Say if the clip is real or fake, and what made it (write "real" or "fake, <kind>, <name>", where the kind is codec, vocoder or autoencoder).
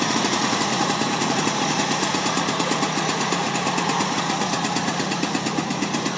fake, vocoder, Vocos